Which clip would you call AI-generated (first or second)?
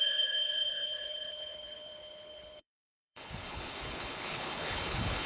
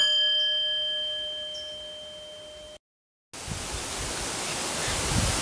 first